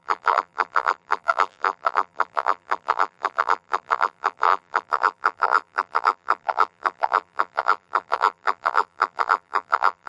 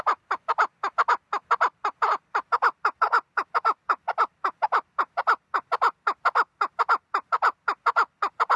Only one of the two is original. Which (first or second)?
second